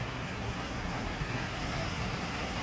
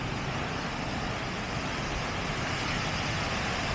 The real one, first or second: second